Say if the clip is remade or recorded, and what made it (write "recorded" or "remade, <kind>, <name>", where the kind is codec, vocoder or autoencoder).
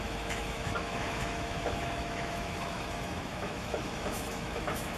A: remade, autoencoder, DAC-VAE